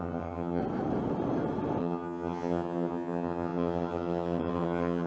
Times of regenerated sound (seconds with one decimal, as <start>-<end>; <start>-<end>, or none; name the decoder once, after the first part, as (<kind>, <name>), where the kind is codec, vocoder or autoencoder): 0.0-0.6 (vocoder, HiFi-GAN); 1.8-5.1